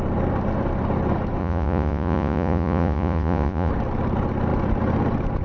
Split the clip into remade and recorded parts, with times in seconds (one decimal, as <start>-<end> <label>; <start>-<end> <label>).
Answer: 0.0-1.4 recorded; 1.4-3.7 remade; 3.7-5.4 recorded